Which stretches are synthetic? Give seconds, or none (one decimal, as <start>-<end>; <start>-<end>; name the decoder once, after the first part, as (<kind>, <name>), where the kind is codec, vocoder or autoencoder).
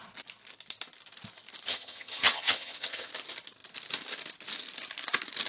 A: 1.7-3.1 (vocoder, HiFi-GAN)